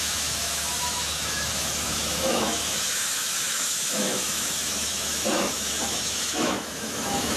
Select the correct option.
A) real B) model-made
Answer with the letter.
B